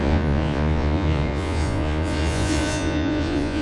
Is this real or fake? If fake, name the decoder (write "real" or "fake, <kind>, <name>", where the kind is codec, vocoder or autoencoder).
fake, vocoder, Vocos